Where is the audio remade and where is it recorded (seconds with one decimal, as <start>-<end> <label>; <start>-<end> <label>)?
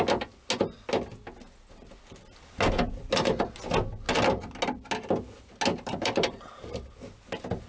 0.0-5.7 recorded; 5.7-7.0 remade; 7.0-7.7 recorded